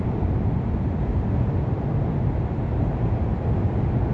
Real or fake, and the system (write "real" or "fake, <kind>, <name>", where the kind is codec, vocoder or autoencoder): real